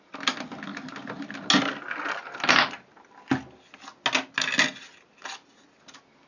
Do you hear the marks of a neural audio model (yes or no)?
no